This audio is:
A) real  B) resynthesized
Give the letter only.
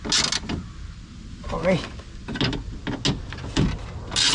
A